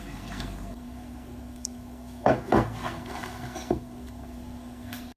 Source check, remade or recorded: remade